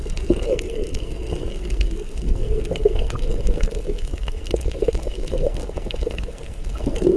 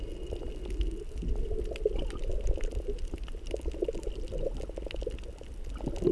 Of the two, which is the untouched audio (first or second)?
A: second